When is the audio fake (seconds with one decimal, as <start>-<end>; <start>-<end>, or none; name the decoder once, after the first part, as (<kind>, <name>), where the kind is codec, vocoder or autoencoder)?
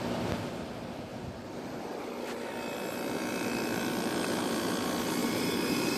1.1-2.0 (vocoder, BigVGAN v2); 5.2-6.0